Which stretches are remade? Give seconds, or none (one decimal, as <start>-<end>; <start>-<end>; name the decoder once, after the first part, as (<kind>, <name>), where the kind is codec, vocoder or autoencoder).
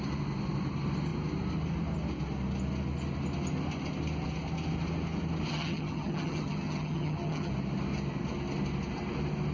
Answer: 5.5-7.5 (vocoder, HiFi-GAN)